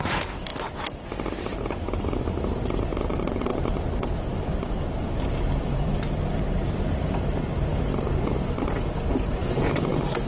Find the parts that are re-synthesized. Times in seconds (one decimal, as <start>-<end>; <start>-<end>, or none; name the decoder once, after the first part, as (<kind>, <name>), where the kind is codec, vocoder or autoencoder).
0.0-0.5 (vocoder, BigVGAN v2); 1.9-10.3